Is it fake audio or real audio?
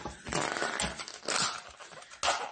real